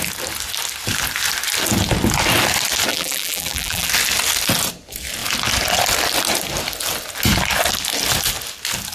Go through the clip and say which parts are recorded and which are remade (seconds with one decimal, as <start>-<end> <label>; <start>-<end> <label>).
0.0-2.9 recorded; 2.9-3.9 remade; 3.9-8.9 recorded